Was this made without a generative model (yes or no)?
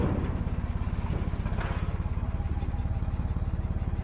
yes